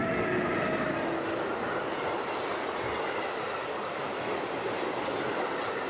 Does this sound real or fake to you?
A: real